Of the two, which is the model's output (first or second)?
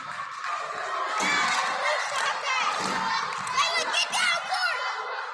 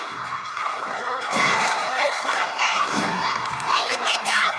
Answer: second